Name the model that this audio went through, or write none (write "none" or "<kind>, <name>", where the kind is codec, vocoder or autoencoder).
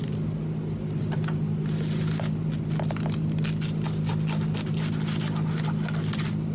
none